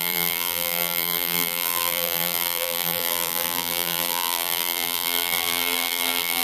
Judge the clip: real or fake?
fake